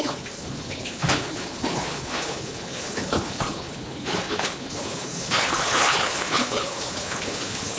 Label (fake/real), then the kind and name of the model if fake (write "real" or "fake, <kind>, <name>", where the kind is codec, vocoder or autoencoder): fake, codec, HILCodec